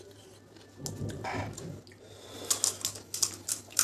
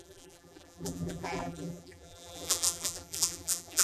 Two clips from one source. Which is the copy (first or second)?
second